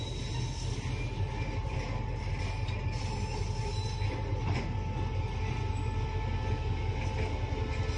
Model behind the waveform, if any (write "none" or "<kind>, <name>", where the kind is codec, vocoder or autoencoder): none